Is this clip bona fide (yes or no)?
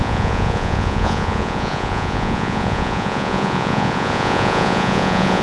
no